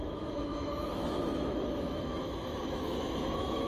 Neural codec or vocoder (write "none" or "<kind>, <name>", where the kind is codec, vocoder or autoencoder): autoencoder, DAC-VAE